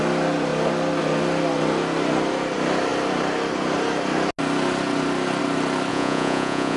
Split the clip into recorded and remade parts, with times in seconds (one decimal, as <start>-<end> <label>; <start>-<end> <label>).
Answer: 0.0-5.9 recorded; 5.9-6.8 remade